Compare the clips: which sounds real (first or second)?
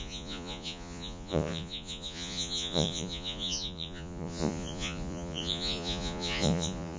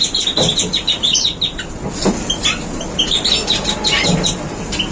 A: second